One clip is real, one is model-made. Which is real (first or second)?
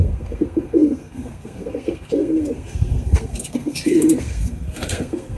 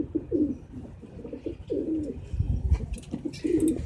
second